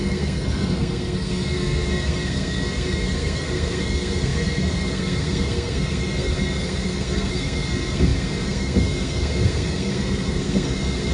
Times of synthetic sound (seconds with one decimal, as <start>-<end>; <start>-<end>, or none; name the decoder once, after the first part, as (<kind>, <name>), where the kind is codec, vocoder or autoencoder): 0.0-11.1 (codec, SNAC)